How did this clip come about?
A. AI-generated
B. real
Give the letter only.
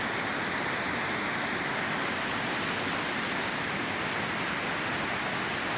B